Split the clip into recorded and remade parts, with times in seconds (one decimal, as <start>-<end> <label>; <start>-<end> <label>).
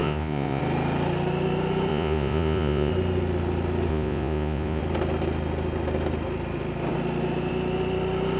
0.0-0.6 remade; 0.6-1.9 recorded; 1.9-2.9 remade; 2.9-3.9 recorded; 3.9-4.8 remade; 4.8-8.4 recorded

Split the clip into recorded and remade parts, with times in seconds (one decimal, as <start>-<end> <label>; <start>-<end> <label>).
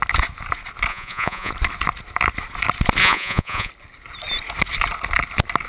0.0-0.9 recorded; 0.9-1.5 remade; 1.5-3.0 recorded; 3.0-3.7 remade; 3.7-5.7 recorded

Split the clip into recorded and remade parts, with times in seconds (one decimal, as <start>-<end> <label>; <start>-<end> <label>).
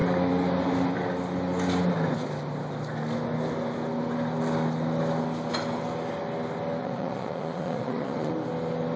0.0-6.8 recorded; 6.8-8.3 remade; 8.3-9.0 recorded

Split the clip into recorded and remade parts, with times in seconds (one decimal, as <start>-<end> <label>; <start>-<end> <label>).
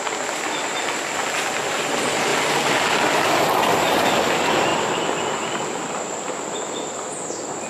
0.0-7.7 recorded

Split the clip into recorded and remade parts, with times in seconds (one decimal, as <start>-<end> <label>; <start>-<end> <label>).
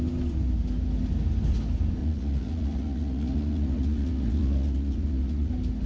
0.0-2.0 recorded; 2.0-5.5 remade; 5.5-5.9 recorded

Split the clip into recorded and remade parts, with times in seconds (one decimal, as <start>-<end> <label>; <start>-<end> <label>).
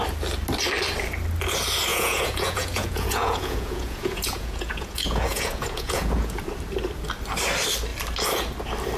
0.0-1.9 recorded; 1.9-6.4 remade; 6.4-9.0 recorded